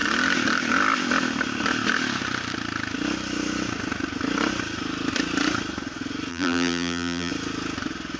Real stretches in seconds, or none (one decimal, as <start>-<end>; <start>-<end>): 0.0-6.3; 7.3-8.2